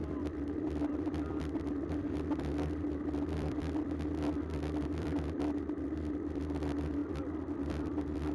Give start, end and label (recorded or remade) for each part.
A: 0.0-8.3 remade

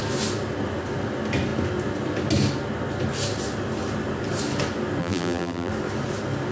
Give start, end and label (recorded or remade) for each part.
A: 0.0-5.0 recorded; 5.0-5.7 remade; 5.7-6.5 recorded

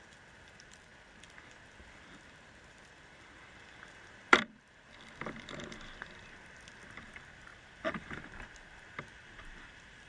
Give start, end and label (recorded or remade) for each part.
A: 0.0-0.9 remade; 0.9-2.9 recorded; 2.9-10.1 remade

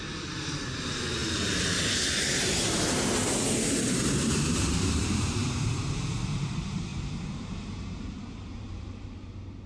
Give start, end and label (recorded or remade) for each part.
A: 0.0-1.2 recorded; 1.2-2.5 remade; 2.5-3.2 recorded; 3.2-5.8 remade; 5.8-6.9 recorded; 6.9-8.8 remade; 8.8-9.7 recorded

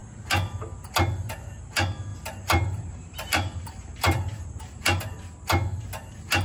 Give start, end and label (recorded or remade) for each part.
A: 0.0-2.1 recorded; 2.1-5.0 remade; 5.0-6.4 recorded